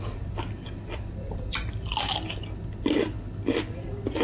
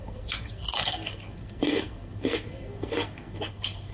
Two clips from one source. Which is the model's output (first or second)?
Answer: second